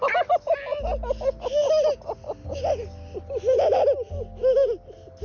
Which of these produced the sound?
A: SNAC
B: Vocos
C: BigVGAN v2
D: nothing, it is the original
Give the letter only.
D